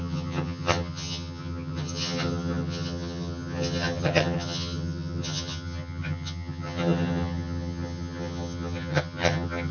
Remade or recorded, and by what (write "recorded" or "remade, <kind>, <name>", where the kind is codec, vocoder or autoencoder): remade, vocoder, HiFi-GAN